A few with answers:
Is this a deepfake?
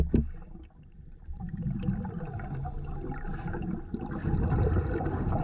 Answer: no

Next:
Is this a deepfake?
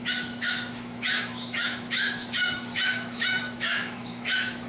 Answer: yes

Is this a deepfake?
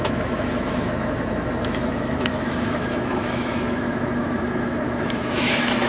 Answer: yes